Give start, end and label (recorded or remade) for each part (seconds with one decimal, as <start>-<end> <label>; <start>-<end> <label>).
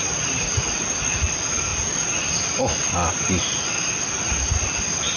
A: 0.0-5.2 recorded